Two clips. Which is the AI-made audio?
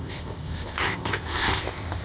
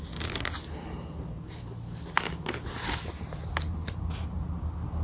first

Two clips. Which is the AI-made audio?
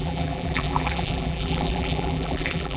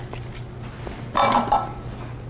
first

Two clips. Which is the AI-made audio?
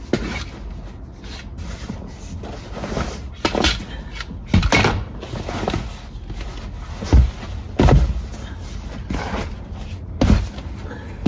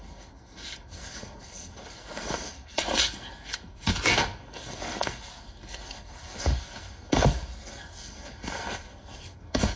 second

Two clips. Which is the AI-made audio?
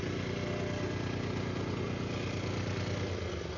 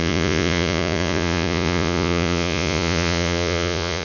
second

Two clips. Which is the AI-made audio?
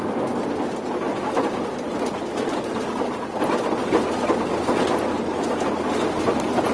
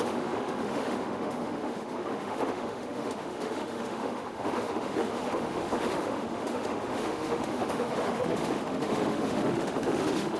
second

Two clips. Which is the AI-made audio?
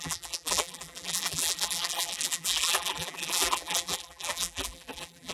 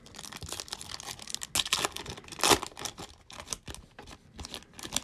first